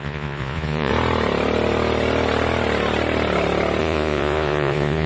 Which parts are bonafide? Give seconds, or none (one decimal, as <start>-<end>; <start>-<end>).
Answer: 0.9-3.8